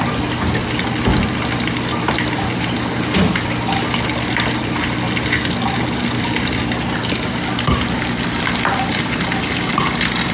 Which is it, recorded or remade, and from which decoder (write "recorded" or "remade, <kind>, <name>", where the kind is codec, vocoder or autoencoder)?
recorded